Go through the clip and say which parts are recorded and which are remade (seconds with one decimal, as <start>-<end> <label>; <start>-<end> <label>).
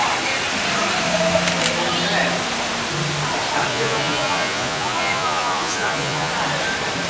0.0-3.7 recorded; 3.7-6.3 remade; 6.3-7.1 recorded